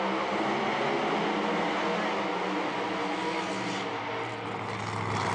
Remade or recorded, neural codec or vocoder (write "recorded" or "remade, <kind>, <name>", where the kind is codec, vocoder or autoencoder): recorded